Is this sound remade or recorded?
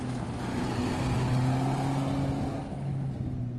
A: recorded